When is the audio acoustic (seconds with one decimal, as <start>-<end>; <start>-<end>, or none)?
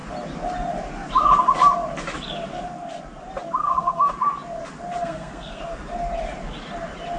0.0-3.6; 4.1-5.0; 5.6-7.2